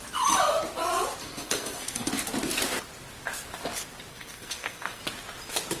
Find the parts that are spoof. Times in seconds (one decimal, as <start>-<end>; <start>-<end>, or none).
1.2-2.1; 4.1-5.0